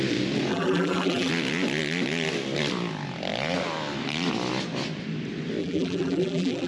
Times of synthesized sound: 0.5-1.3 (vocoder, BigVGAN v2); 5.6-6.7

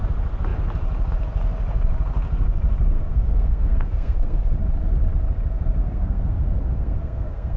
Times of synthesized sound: 2.9-4.4 (codec, SNAC); 5.8-7.6

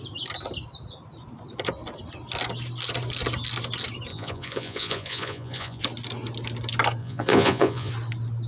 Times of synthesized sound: 4.1-5.8 (vocoder, Vocos); 7.0-7.9

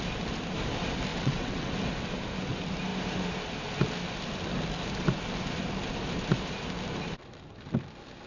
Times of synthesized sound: 1.1-1.7 (vocoder, WaveNeXt)

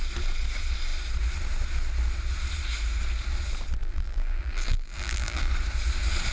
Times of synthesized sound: 3.8-5.5 (vocoder, BigVGAN v2)

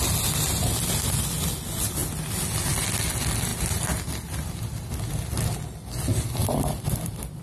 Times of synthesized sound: none